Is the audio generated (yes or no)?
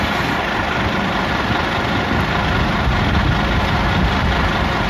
no